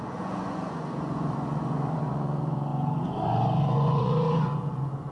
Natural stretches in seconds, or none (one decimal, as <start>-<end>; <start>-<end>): none